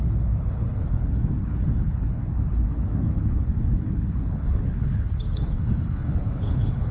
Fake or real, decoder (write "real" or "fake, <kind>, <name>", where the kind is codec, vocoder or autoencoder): fake, codec, HILCodec